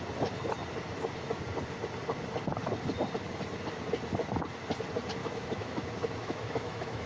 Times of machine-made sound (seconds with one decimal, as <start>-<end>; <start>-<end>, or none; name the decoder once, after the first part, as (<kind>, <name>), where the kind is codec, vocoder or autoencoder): 5.2-7.1 (autoencoder, DAC-VAE)